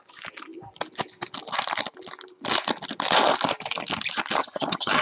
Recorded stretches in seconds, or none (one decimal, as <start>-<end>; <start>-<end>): 0.0-4.4